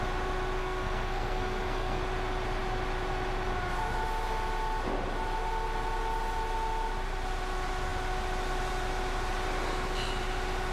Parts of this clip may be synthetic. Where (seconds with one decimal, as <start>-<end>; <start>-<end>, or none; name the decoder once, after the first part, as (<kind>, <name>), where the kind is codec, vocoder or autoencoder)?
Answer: 0.6-2.0 (codec, SNAC)